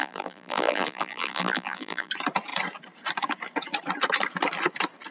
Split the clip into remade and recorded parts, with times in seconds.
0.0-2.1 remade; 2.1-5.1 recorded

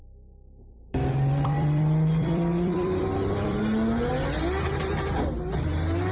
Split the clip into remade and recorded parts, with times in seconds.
0.0-3.6 remade; 3.6-6.1 recorded

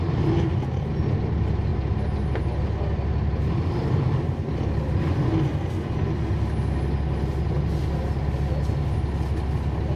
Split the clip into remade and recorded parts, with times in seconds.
0.0-10.0 recorded

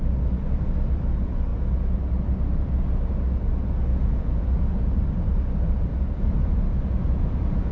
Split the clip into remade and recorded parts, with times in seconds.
0.0-3.9 recorded; 3.9-4.8 remade; 4.8-5.9 recorded; 5.9-7.7 remade

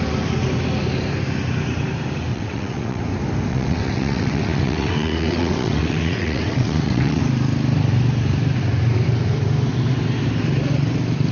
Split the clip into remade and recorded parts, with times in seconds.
0.0-2.3 recorded; 2.3-3.0 remade; 3.0-3.5 recorded; 3.5-7.2 remade; 7.2-11.3 recorded

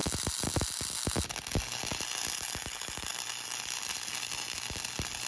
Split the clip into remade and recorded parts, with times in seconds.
0.0-5.3 recorded